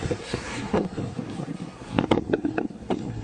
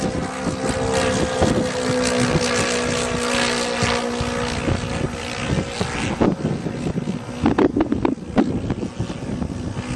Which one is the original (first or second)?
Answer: second